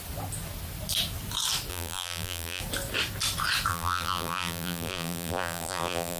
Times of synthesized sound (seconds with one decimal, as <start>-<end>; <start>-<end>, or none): 1.7-2.6; 3.7-6.2

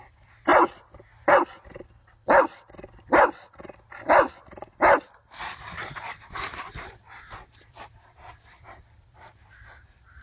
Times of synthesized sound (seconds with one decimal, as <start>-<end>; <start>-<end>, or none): 0.0-0.5; 5.8-10.2

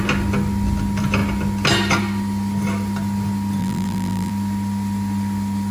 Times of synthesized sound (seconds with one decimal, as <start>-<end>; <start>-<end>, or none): 3.6-4.3

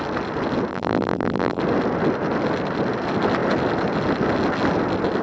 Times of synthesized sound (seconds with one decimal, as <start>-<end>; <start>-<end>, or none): 0.7-1.6

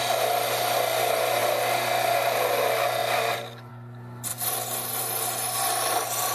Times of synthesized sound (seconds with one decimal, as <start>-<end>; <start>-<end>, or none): 4.3-5.0